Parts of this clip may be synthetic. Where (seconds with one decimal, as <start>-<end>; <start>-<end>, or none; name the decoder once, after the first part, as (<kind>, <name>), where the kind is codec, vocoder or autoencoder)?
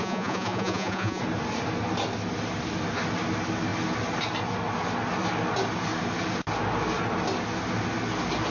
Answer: 0.0-1.2 (vocoder, Vocos)